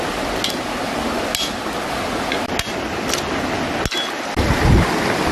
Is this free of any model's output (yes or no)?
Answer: yes